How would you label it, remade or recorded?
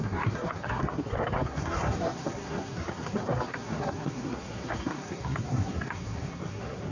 remade